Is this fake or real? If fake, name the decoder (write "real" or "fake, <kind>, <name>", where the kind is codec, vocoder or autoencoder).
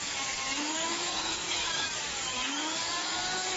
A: fake, codec, DAC